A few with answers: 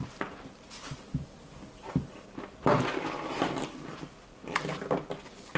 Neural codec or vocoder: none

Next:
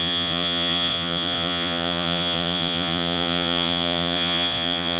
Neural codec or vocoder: vocoder, Vocos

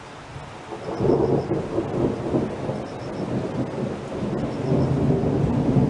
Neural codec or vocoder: none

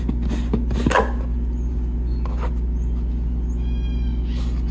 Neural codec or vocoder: none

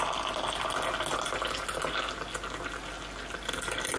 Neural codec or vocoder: none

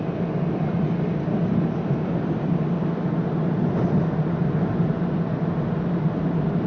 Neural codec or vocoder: none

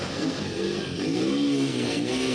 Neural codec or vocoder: codec, SNAC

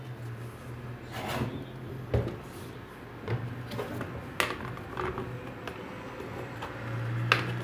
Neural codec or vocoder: none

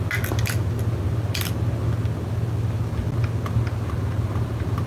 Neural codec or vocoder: none